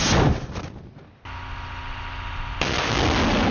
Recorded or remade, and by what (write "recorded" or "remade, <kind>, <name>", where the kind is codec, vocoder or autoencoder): recorded